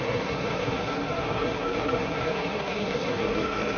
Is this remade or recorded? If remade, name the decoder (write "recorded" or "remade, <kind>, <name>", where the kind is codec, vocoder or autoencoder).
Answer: remade, codec, SNAC